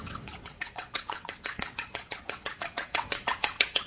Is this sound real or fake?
fake